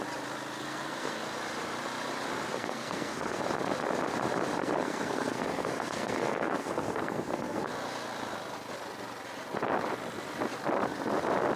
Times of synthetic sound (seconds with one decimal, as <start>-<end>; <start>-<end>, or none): 0.6-1.2; 2.5-3.4; 4.6-7.7